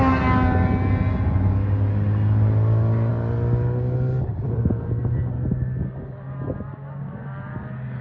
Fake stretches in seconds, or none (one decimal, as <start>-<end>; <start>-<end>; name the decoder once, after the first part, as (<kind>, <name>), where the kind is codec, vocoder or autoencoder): none